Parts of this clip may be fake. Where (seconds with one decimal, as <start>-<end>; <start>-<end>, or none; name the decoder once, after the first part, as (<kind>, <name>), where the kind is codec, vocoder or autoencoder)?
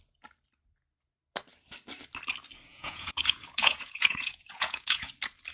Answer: 2.7-5.1 (vocoder, Vocos)